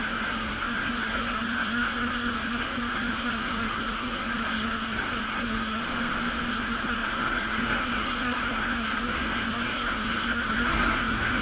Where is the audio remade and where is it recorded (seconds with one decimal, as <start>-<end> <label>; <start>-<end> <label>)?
0.0-5.8 remade; 5.8-6.5 recorded; 6.5-11.4 remade